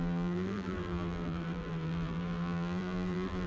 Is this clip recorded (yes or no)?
no